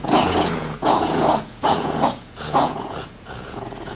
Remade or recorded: remade